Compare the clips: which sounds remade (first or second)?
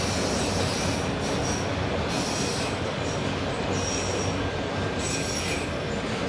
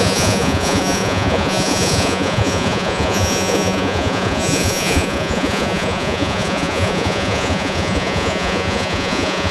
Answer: second